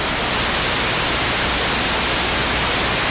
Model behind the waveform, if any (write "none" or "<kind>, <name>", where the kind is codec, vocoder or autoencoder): none